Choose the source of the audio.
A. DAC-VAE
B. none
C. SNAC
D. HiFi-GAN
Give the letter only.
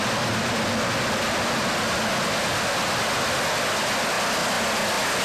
B